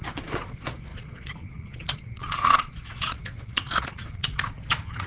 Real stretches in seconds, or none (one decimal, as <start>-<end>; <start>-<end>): none